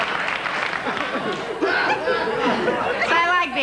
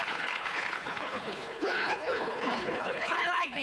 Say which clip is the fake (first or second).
second